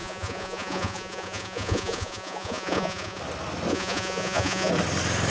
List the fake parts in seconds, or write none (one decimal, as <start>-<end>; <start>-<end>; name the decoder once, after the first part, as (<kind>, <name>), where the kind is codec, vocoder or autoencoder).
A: 0.0-3.2 (vocoder, Vocos); 3.7-4.7

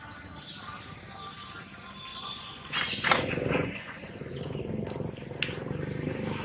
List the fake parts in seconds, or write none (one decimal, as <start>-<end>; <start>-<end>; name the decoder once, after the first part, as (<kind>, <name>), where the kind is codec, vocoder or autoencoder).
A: 2.1-4.6 (vocoder, Vocos)

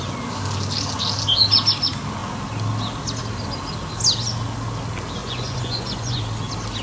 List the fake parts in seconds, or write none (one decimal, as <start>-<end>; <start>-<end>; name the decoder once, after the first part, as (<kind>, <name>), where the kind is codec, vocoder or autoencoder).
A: 5.2-6.2 (vocoder, Vocos)